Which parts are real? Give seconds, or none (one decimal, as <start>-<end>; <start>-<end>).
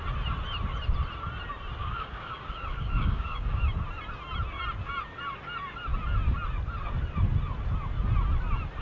0.0-1.8; 3.6-8.8